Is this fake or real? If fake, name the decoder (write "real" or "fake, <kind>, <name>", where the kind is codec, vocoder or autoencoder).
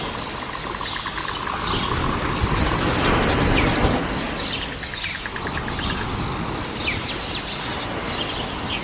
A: real